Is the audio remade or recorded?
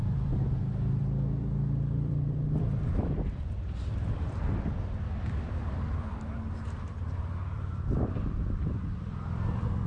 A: remade